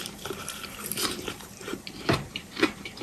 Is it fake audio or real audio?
fake